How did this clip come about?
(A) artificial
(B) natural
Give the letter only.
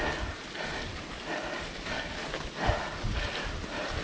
B